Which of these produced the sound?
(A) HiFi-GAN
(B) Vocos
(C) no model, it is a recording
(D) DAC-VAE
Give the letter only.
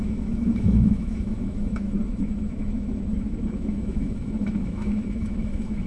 D